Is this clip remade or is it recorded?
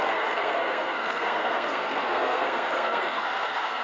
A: remade